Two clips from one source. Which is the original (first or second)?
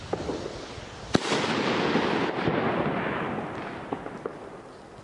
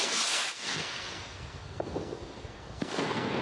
first